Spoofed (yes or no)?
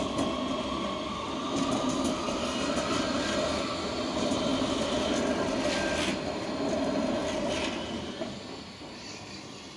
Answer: no